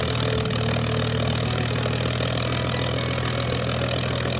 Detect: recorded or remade recorded